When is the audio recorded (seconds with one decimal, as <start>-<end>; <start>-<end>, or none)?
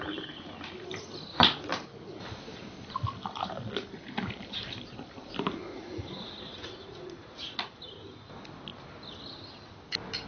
0.0-5.7; 7.9-10.3